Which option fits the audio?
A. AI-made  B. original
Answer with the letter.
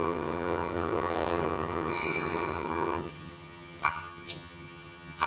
A